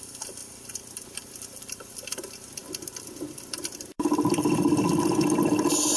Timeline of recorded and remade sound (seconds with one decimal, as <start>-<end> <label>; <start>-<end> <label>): 0.0-6.0 remade